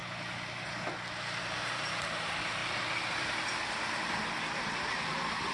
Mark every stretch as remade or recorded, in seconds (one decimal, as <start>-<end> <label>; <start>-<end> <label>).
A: 0.0-1.4 recorded; 1.4-2.6 remade; 2.6-3.3 recorded; 3.3-5.5 remade